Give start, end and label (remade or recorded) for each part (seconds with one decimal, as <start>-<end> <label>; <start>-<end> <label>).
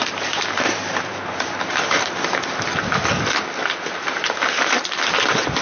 0.0-2.5 remade; 2.5-3.6 recorded; 3.6-5.0 remade; 5.0-5.6 recorded